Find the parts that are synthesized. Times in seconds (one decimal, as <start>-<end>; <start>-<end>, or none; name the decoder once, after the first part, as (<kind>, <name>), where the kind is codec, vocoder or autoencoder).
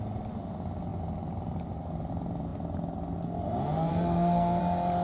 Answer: 3.9-4.6 (codec, SNAC)